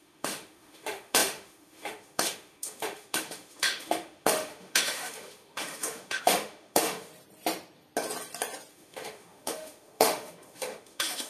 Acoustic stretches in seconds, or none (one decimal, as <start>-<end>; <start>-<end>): 7.1-8.7